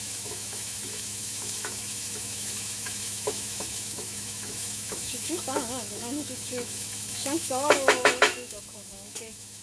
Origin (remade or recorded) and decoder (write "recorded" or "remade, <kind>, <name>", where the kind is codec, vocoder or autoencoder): remade, autoencoder, DAC-VAE